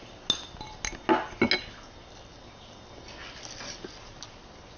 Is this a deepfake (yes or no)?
no